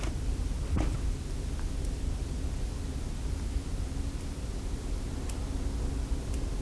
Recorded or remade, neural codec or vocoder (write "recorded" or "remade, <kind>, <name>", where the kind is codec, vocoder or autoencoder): recorded